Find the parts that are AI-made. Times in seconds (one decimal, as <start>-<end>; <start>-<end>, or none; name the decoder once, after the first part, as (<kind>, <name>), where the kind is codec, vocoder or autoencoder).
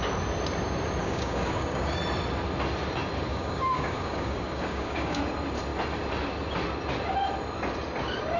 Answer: 1.0-2.0 (codec, DAC); 3.3-5.2